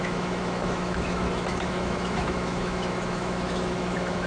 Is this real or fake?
fake